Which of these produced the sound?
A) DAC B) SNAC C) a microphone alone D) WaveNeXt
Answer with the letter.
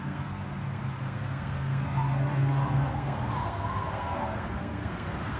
B